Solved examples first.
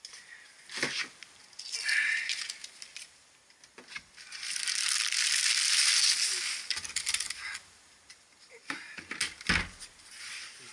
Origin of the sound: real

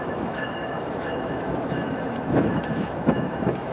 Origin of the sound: fake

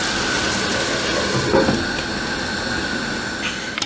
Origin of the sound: real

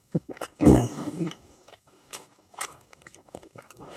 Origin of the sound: fake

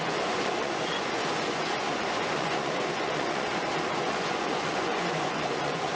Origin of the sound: fake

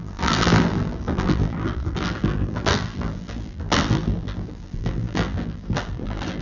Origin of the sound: fake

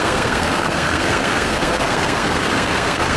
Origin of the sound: fake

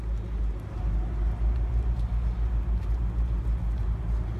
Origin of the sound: real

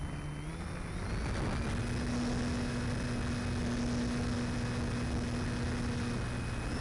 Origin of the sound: real